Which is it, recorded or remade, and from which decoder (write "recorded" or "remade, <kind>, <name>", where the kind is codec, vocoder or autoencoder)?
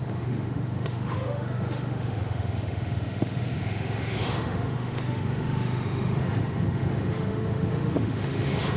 remade, autoencoder, DAC-VAE